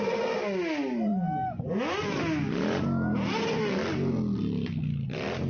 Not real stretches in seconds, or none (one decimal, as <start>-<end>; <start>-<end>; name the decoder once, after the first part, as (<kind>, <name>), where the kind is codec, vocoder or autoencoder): none